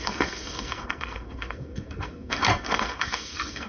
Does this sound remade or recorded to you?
remade